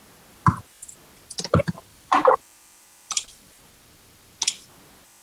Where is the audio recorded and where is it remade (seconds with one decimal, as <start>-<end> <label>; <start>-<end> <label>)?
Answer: 0.0-1.9 recorded; 1.9-3.7 remade; 3.7-5.2 recorded